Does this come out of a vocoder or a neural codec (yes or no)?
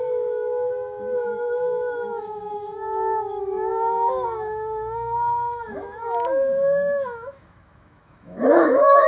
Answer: yes